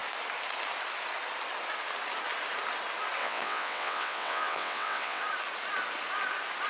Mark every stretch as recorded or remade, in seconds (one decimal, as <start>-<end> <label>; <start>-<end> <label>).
0.0-3.2 recorded; 3.2-5.2 remade; 5.2-6.7 recorded

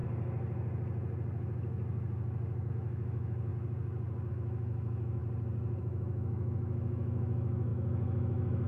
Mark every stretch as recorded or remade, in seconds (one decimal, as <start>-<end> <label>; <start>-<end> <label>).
0.0-2.7 recorded; 2.7-3.5 remade; 3.5-4.3 recorded; 4.3-5.2 remade; 5.2-5.8 recorded; 5.8-8.7 remade